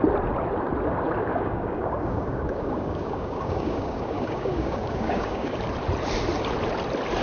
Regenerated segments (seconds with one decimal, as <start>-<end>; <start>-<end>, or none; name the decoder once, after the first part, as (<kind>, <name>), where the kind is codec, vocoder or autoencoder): 1.3-5.6 (codec, DAC)